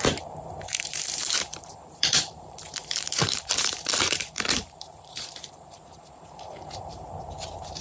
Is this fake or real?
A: fake